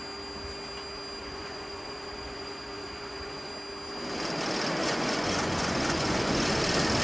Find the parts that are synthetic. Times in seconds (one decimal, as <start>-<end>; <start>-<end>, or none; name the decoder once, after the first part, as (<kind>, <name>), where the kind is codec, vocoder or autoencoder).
1.2-3.5 (vocoder, Vocos); 4.8-6.6